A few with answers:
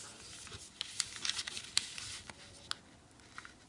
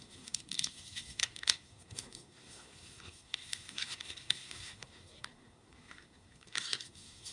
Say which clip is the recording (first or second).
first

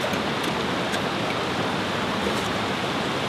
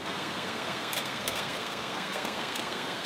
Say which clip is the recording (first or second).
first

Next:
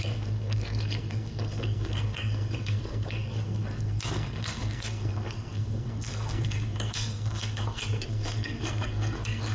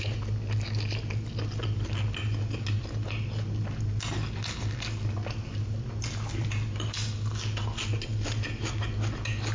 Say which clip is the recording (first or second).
second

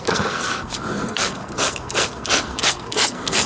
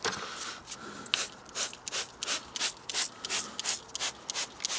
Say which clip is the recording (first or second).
second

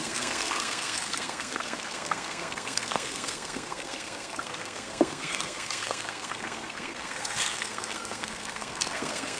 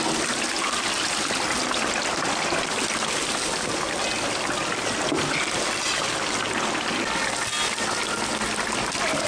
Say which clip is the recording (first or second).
second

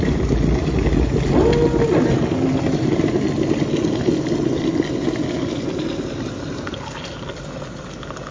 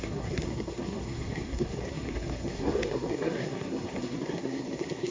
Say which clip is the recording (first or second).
first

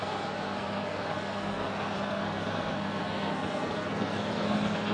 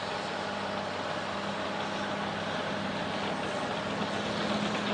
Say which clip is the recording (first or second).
second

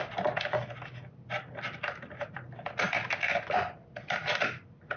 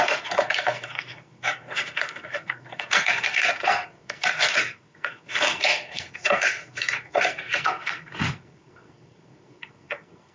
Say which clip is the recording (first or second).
first